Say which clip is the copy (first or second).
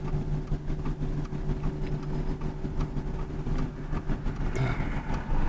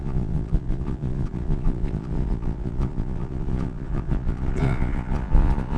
second